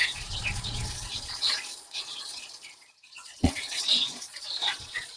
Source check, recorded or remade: remade